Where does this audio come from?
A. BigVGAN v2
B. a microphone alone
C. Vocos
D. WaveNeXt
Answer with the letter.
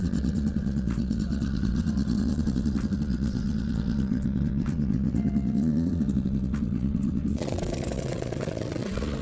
D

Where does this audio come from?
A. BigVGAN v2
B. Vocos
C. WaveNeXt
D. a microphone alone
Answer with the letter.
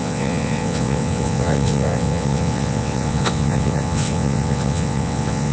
C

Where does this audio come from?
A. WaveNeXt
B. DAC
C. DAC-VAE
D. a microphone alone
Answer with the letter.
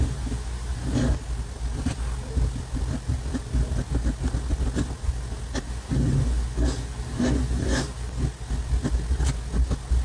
D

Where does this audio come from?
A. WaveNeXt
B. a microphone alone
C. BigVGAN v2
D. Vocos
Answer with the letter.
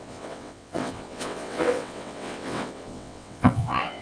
A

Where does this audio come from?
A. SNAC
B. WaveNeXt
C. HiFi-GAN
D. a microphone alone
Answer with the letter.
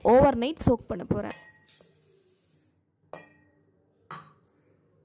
D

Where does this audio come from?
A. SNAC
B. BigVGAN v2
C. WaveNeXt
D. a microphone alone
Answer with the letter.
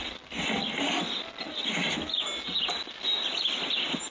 D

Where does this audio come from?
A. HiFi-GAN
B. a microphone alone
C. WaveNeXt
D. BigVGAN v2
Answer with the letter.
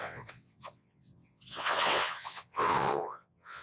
C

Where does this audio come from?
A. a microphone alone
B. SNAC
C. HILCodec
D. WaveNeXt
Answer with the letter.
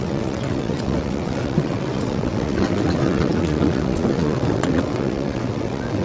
D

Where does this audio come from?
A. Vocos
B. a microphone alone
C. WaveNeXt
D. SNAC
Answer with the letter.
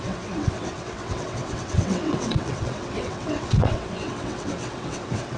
C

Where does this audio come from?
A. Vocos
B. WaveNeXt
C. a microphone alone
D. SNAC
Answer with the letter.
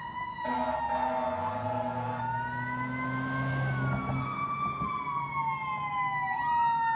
C